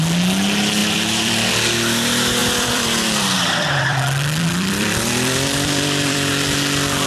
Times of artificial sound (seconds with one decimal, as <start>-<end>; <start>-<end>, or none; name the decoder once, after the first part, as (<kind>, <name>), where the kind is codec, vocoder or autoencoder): 0.8-1.5 (vocoder, BigVGAN v2); 2.4-6.3